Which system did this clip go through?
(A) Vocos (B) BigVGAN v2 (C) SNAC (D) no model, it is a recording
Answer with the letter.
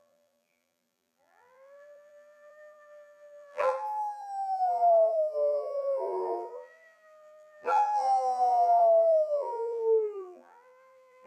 B